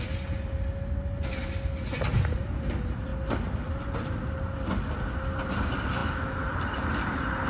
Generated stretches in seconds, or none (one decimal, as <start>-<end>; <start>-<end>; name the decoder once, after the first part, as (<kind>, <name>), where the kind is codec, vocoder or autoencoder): none

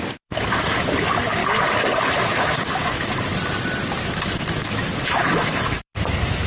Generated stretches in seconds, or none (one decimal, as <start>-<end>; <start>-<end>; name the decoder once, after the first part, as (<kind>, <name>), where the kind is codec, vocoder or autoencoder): 0.0-1.4 (autoencoder, DAC-VAE); 2.2-3.3; 4.0-6.5

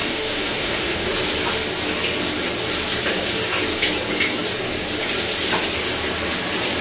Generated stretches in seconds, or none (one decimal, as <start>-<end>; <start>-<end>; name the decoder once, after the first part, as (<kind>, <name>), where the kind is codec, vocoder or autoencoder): 0.0-1.1 (autoencoder, DAC-VAE)